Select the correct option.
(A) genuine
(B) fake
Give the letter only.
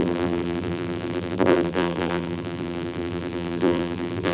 B